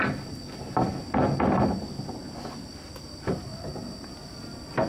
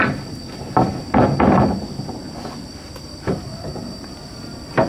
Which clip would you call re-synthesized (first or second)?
second